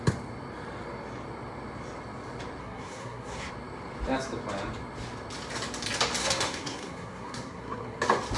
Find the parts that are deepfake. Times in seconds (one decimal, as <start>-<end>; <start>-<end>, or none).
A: 2.6-3.5; 6.2-8.0